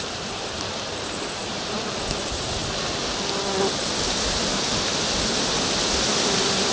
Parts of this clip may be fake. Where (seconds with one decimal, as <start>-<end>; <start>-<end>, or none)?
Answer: 0.0-2.6